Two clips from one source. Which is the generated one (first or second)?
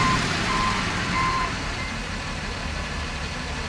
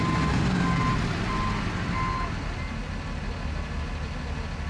first